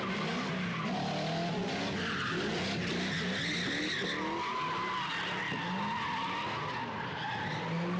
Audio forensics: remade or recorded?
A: recorded